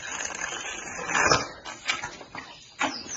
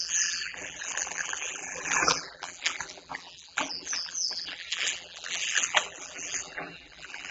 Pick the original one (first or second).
first